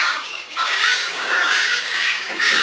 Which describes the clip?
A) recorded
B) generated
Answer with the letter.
B